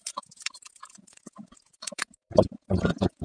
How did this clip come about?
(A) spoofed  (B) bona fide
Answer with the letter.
A